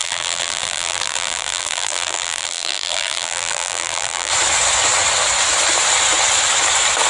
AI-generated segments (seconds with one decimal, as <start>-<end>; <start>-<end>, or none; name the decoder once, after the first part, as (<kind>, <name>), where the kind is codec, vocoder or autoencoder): 0.0-4.3 (vocoder, BigVGAN v2)